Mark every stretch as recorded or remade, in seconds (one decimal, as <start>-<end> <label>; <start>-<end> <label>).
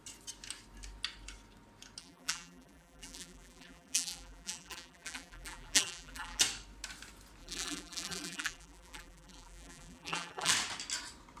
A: 0.0-2.0 recorded; 2.0-6.4 remade; 6.4-7.4 recorded; 7.4-10.5 remade; 10.5-11.4 recorded